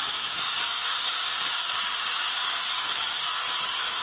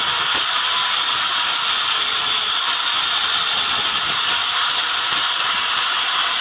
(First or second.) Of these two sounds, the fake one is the first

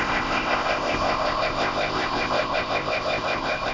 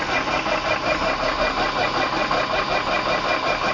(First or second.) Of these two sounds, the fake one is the first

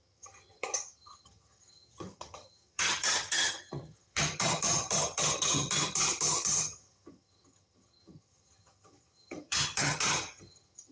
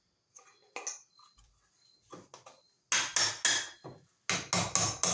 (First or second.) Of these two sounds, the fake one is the first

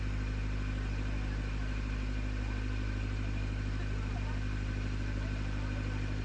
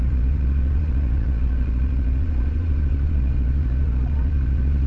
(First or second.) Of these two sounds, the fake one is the second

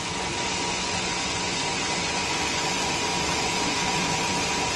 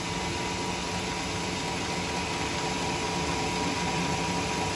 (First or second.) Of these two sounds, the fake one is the first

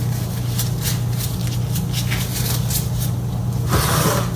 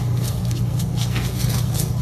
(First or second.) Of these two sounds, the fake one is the second